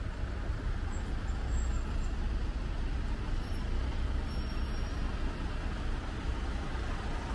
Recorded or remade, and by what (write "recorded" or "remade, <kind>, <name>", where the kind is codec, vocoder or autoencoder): recorded